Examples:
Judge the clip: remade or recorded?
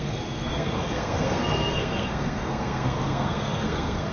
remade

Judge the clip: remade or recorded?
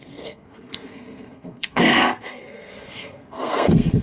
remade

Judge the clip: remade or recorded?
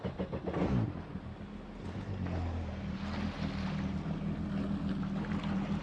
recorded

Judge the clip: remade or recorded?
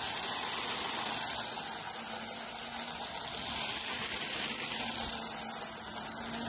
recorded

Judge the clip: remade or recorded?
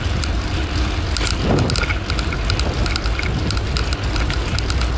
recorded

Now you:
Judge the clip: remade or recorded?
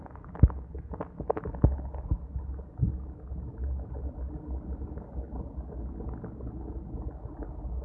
recorded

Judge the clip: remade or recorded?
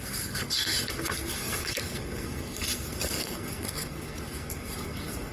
remade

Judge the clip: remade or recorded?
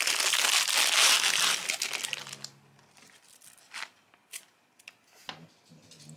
recorded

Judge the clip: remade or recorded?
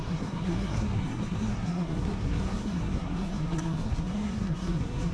remade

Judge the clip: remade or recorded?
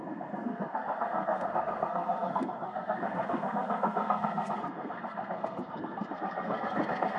remade